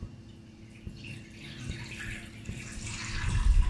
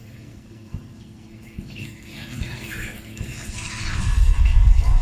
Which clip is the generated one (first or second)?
second